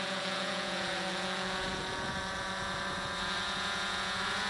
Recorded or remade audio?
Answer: remade